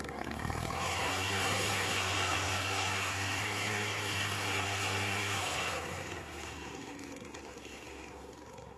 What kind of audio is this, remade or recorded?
remade